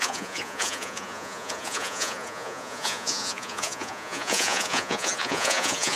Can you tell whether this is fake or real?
fake